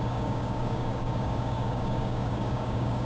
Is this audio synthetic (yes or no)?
yes